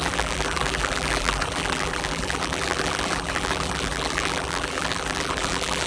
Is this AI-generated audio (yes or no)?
yes